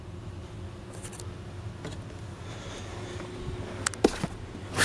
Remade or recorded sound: recorded